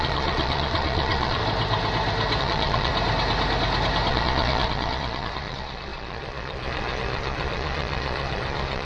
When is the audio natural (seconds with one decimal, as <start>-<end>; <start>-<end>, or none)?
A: 1.4-2.4; 2.9-4.1